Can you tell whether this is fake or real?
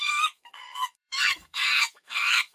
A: fake